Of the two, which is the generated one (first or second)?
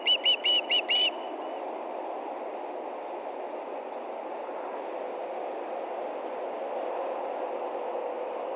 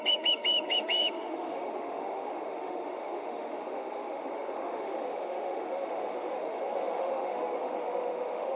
second